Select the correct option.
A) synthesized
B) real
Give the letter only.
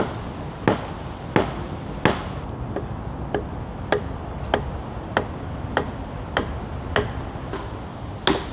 B